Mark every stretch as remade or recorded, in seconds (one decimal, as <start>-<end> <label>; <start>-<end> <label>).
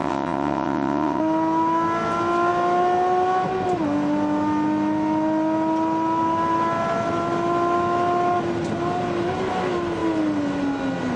0.0-1.2 remade; 1.2-11.2 recorded